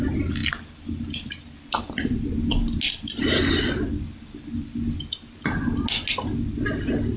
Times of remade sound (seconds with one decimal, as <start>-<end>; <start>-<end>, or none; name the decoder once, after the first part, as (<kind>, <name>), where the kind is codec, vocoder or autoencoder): none